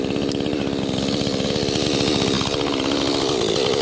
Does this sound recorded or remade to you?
recorded